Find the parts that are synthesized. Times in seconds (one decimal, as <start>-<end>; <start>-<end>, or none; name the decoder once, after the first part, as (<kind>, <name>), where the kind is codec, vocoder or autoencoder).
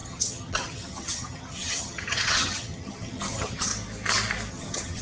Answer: 0.0-3.7 (vocoder, HiFi-GAN); 4.5-5.0